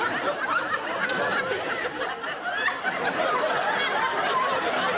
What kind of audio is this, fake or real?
real